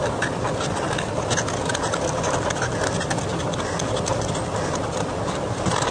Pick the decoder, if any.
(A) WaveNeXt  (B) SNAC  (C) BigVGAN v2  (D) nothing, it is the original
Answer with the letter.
D